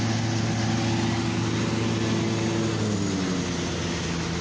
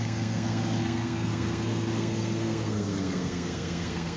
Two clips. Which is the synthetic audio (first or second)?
second